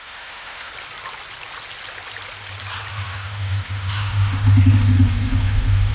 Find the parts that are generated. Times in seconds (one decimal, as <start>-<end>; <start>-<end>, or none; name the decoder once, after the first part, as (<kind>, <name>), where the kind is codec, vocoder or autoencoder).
0.0-0.7 (autoencoder, DAC-VAE); 2.9-5.9

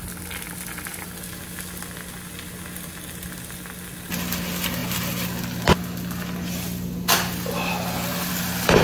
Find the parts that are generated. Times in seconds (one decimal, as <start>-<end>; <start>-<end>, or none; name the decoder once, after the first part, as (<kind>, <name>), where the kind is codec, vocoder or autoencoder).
none